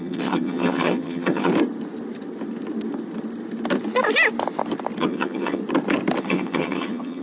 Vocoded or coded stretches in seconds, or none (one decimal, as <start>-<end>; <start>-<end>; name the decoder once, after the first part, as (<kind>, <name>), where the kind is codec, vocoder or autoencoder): 0.0-1.5 (vocoder, HiFi-GAN); 5.0-5.6; 6.2-7.2